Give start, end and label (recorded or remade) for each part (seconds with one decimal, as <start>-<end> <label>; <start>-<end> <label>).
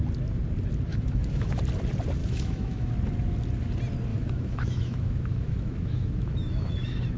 0.0-0.9 recorded; 0.9-1.5 remade; 1.5-2.2 recorded; 2.2-2.9 remade; 2.9-4.1 recorded; 4.1-7.2 remade